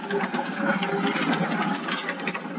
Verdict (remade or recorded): recorded